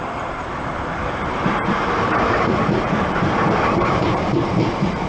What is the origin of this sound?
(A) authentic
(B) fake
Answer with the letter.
B